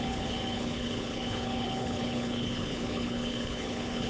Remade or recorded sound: remade